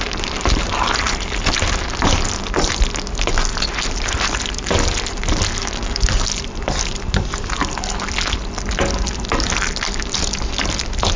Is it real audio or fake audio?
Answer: real